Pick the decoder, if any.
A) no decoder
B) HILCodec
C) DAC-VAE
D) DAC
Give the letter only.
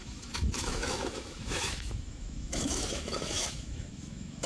C